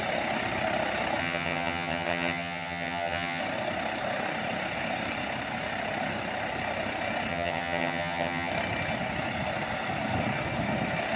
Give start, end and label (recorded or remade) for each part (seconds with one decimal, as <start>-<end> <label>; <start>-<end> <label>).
0.0-1.2 recorded; 1.2-3.4 remade; 3.4-7.3 recorded; 7.3-8.5 remade; 8.5-11.2 recorded